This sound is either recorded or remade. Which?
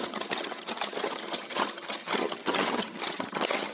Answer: remade